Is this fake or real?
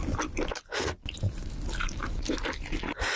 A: real